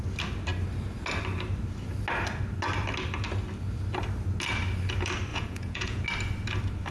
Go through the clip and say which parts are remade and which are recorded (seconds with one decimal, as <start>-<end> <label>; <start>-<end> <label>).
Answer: 0.0-5.3 recorded; 5.3-6.0 remade; 6.0-6.9 recorded